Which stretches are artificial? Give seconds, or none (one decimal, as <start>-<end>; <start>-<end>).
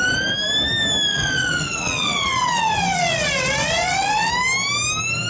1.1-4.3